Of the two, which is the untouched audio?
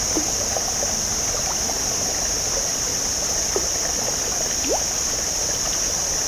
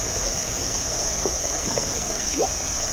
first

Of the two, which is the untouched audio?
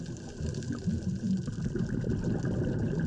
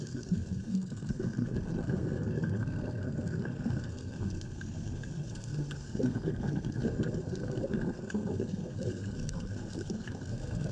first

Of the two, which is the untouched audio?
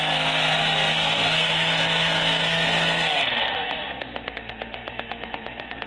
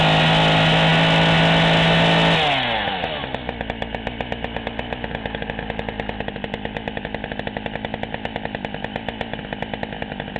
second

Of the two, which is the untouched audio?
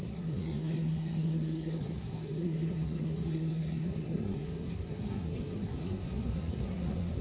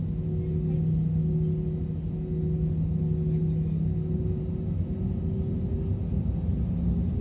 second